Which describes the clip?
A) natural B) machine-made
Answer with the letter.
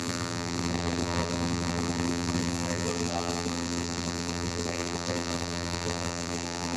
B